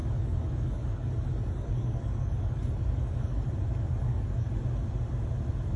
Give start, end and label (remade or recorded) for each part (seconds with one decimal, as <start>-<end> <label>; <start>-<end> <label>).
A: 0.0-3.5 remade; 3.5-4.0 recorded; 4.0-4.5 remade; 4.5-5.8 recorded